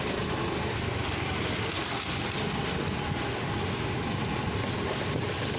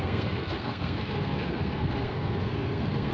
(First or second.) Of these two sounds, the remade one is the second